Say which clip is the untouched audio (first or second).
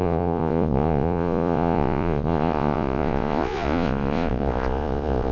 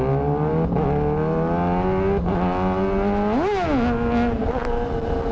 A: second